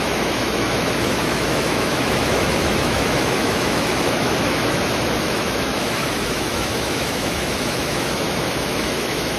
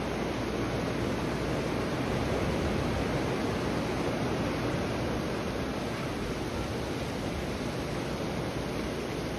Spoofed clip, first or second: first